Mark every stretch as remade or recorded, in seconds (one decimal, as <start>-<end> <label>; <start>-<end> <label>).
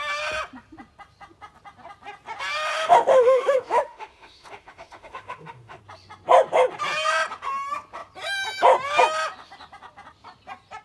0.0-2.7 recorded; 2.7-5.8 remade; 5.8-10.8 recorded